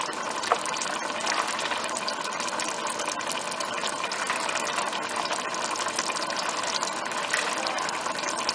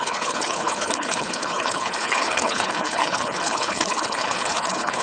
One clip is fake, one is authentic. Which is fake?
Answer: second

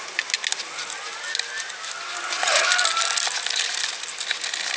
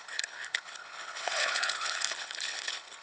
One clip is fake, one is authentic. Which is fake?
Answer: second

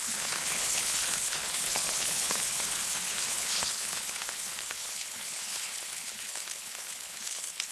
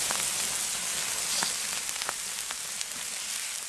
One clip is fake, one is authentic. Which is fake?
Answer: first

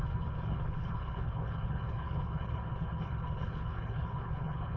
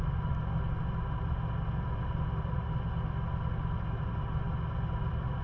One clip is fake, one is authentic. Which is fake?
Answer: first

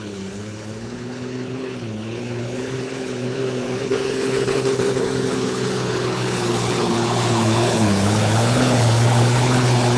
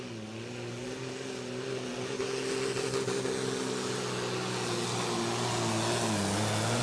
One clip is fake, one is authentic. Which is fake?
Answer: first